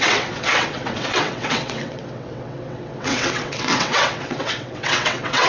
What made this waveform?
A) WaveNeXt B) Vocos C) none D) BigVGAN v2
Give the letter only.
A